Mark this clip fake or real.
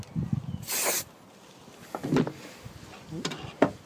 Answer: real